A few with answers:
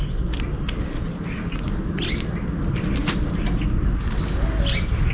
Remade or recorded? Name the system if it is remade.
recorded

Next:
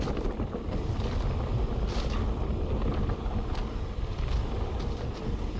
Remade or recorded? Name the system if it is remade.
recorded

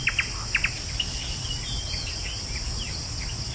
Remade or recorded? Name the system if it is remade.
recorded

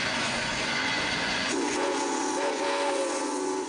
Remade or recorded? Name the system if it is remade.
remade, vocoder, Vocos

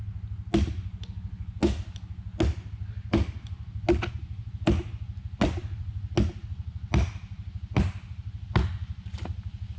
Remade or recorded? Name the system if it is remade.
recorded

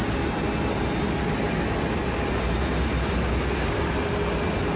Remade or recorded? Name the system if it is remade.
recorded